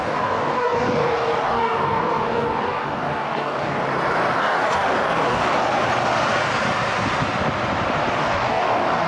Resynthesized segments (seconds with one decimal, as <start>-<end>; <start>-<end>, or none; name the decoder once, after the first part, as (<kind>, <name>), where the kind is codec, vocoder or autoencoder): 0.0-3.8 (codec, DAC); 4.4-5.6; 8.2-9.1